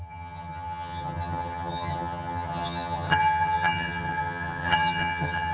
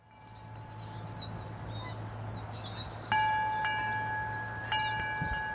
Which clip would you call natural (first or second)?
second